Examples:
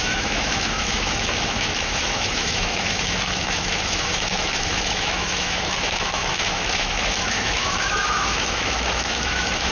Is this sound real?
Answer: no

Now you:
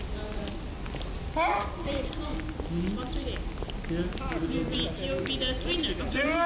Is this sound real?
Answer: yes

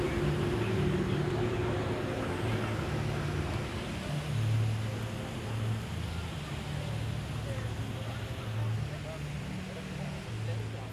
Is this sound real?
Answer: yes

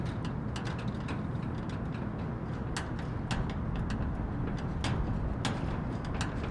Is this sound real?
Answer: yes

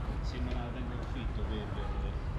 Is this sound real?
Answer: yes